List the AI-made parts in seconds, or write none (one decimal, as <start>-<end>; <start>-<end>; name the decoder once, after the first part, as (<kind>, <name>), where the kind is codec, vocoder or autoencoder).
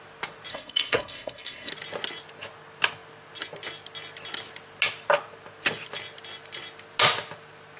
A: 0.5-1.7 (codec, SNAC)